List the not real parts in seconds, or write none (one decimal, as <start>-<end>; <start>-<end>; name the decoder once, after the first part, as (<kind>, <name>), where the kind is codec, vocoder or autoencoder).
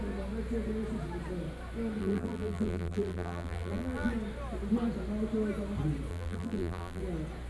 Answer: 2.0-4.1 (vocoder, BigVGAN v2); 6.1-7.0